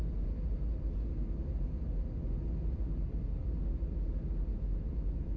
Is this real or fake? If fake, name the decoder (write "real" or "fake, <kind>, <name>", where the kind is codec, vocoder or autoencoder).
real